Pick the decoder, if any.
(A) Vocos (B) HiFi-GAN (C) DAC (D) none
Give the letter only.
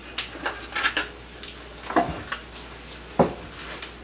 D